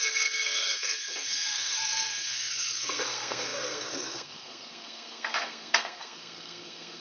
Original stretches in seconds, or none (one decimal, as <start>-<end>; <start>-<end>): none

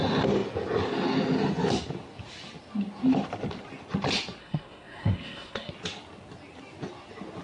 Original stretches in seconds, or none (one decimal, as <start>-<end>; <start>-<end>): 0.0-4.4; 5.7-7.4

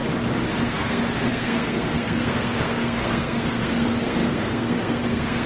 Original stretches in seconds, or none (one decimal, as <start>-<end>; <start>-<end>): 0.0-0.6

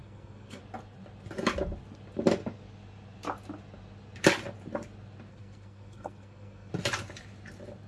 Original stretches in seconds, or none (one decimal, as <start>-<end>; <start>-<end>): 0.6-5.3; 6.7-7.9

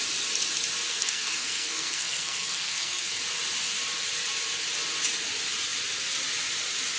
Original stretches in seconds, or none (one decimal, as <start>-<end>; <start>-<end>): 0.0-0.9; 3.2-7.0

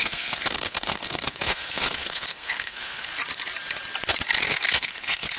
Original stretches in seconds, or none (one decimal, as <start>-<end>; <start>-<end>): 3.1-4.5

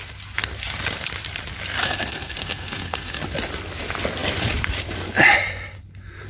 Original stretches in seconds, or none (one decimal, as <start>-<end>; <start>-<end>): 0.0-1.8; 3.2-6.3

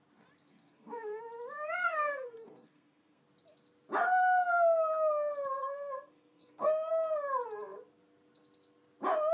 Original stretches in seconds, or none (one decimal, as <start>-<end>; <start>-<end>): 0.0-0.5; 1.2-1.9; 3.2-5.6; 6.9-9.3